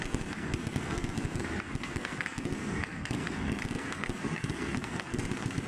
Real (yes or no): no